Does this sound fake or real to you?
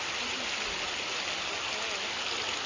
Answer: real